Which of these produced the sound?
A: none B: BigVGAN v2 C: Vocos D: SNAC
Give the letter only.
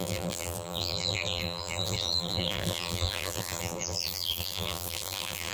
B